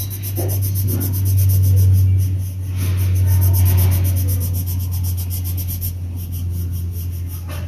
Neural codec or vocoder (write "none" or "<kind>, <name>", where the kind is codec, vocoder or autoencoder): none